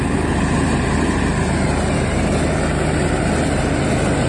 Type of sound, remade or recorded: recorded